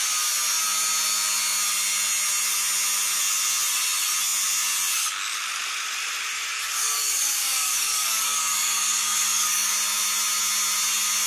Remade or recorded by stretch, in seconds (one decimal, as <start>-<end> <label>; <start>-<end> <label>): 0.0-6.5 recorded; 6.5-9.7 remade; 9.7-11.3 recorded